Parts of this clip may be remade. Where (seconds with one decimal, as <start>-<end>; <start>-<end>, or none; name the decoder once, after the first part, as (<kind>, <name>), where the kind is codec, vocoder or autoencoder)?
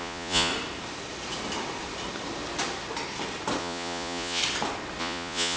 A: 0.0-0.5 (vocoder, Vocos); 3.6-4.4; 5.0-5.6